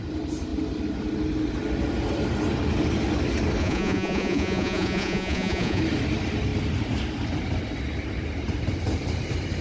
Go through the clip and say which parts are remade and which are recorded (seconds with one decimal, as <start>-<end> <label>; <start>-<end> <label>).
0.0-3.6 recorded; 3.6-5.8 remade; 5.8-9.6 recorded